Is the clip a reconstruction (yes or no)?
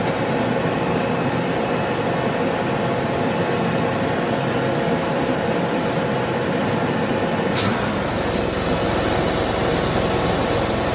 yes